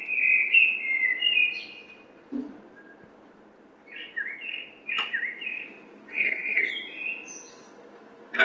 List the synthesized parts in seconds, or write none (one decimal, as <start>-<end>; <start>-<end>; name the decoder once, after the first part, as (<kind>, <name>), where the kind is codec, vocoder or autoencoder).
6.1-6.7 (codec, SNAC)